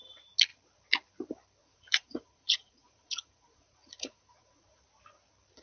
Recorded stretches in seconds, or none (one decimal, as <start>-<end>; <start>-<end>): 0.0-1.6; 4.8-5.6